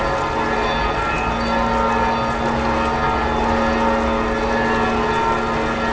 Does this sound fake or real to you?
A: real